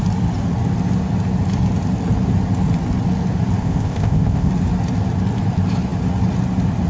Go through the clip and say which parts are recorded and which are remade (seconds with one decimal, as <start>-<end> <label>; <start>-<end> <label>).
0.0-3.6 recorded; 3.6-4.5 remade; 4.5-6.9 recorded